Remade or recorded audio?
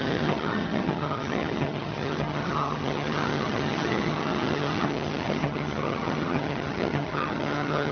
remade